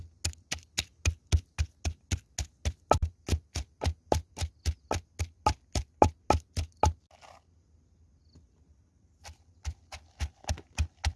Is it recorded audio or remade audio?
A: recorded